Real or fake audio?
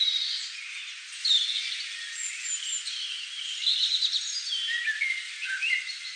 real